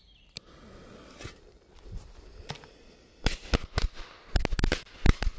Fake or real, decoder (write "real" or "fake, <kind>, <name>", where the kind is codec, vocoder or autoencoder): real